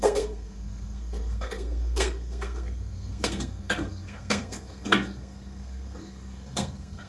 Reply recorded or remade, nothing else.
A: remade